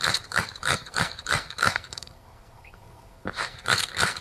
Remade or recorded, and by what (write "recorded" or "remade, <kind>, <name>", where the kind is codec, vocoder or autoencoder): remade, codec, SNAC